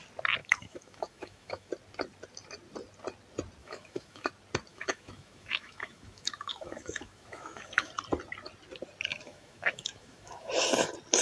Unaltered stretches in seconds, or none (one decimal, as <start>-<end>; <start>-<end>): 0.0-0.4; 1.7-3.6; 4.3-4.7; 7.9-9.1; 10.5-11.2